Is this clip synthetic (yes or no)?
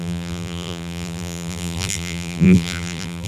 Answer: yes